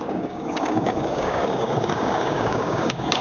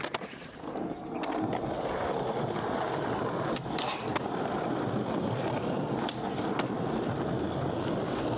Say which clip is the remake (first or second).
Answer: first